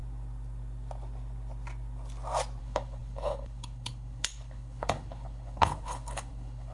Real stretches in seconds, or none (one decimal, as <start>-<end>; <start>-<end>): 0.0-2.6